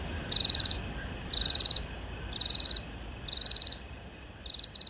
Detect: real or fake real